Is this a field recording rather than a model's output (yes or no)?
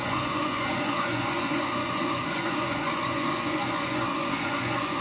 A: no